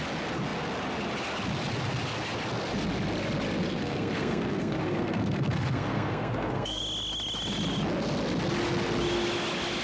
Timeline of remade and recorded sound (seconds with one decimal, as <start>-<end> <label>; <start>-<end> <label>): 0.0-3.6 recorded; 3.6-6.8 remade; 6.8-9.8 recorded